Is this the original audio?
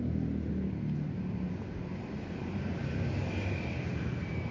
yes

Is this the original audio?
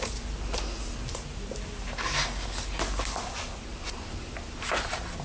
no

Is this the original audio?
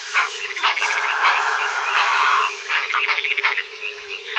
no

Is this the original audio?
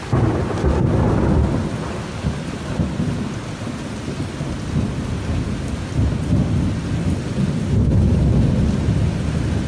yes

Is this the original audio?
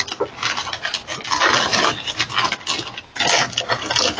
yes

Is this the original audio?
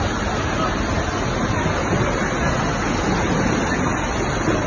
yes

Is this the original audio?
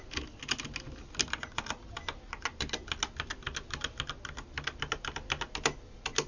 yes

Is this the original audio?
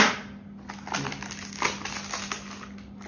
yes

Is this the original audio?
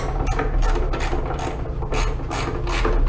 yes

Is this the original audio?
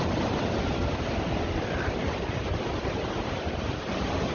no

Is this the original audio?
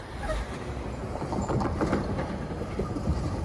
no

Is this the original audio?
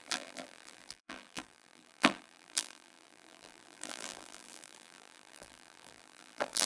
no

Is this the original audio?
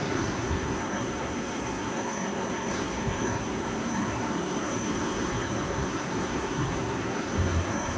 no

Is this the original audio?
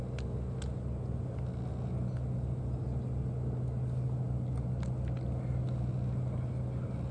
yes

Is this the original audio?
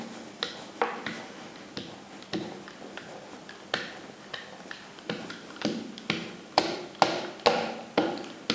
yes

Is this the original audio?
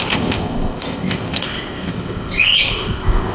no